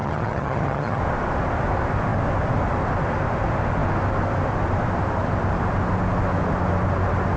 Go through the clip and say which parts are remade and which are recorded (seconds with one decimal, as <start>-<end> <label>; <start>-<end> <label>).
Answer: 0.0-1.0 remade; 1.0-7.4 recorded